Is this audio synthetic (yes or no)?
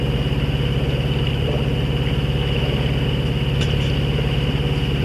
no